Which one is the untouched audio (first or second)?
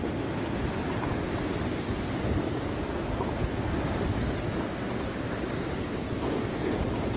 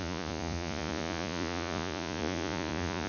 first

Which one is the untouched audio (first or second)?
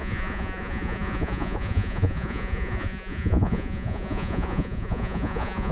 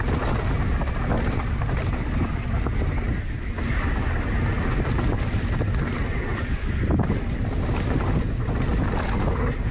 second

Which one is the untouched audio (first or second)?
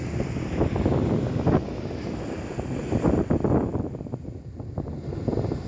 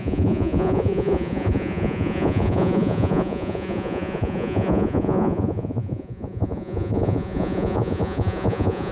first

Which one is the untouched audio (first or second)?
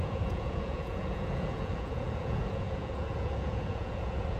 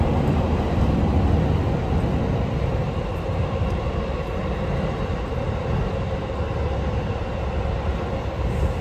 second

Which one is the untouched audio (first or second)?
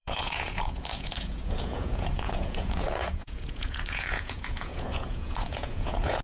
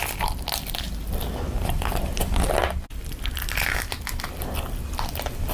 second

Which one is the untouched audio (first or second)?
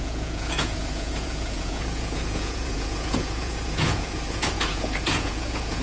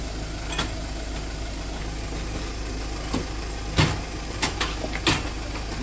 second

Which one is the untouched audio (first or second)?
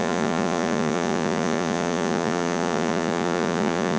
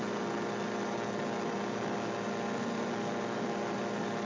second